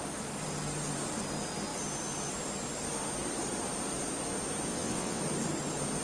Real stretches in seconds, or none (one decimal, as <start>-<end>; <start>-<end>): 0.0-4.7; 5.2-6.0